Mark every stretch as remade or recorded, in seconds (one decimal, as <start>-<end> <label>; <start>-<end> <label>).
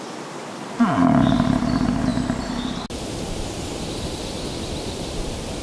0.0-5.6 recorded